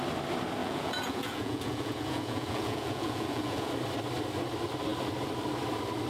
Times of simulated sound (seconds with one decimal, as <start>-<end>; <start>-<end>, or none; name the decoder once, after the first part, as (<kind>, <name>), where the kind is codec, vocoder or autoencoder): 0.6-3.7 (vocoder, Vocos)